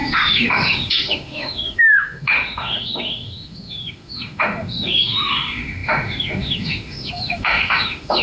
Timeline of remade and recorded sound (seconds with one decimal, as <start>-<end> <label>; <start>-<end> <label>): 0.0-8.2 remade